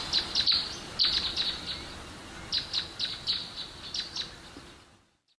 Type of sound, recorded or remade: recorded